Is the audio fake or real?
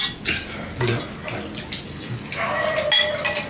real